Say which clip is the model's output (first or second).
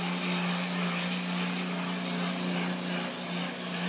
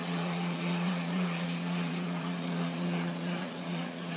second